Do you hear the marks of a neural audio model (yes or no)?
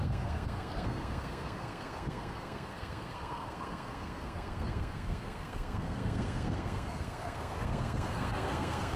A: yes